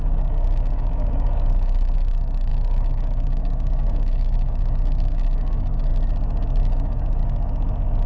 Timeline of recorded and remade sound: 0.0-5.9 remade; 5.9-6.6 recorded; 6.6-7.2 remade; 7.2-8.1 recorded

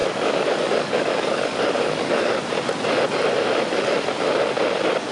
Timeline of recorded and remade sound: 0.0-2.5 remade; 2.5-5.1 recorded

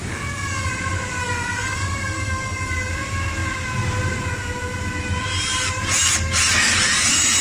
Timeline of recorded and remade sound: 0.0-0.7 remade; 0.7-1.2 recorded; 1.2-2.9 remade; 2.9-7.4 recorded

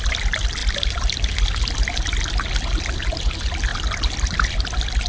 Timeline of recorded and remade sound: 0.0-5.1 recorded

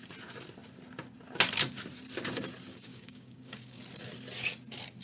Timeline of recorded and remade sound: 0.0-2.7 recorded; 2.7-3.8 remade; 3.8-5.0 recorded

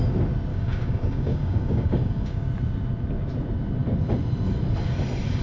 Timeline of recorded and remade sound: 0.0-0.5 recorded; 0.5-2.5 remade; 2.5-5.4 recorded

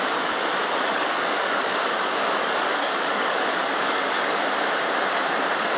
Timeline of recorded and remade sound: 0.0-0.9 recorded; 0.9-4.4 remade; 4.4-5.8 recorded

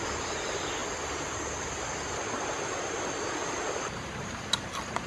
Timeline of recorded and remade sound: 0.0-5.1 recorded